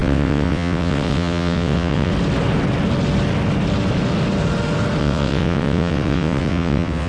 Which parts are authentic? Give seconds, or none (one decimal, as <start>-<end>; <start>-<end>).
2.1-5.0